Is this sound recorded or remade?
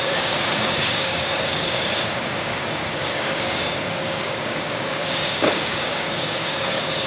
remade